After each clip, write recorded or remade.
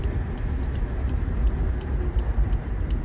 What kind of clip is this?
remade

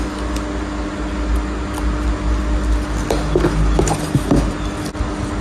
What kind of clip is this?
recorded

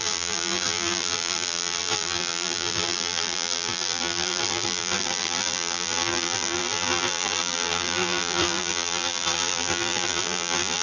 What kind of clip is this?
remade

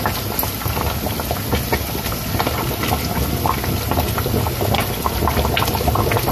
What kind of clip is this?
recorded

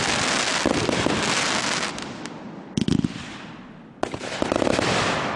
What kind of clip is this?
recorded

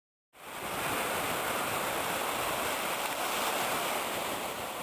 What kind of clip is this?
remade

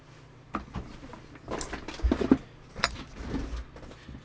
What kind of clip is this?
recorded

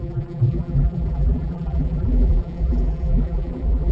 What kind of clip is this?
remade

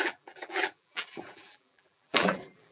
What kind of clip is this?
remade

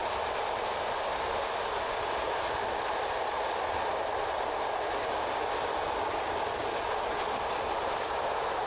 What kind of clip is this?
recorded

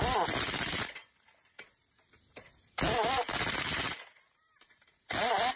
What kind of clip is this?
recorded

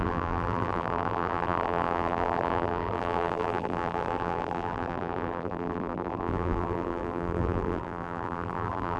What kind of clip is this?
remade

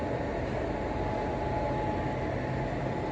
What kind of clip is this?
recorded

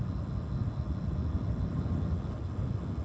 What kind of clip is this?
recorded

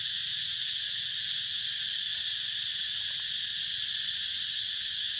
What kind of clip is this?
recorded